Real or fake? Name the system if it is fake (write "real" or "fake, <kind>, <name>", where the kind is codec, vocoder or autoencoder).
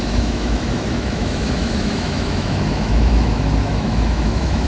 fake, autoencoder, DAC-VAE